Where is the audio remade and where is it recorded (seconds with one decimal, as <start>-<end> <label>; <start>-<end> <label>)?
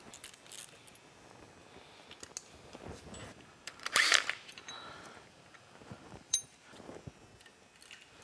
0.0-3.2 recorded; 3.2-6.8 remade; 6.8-8.2 recorded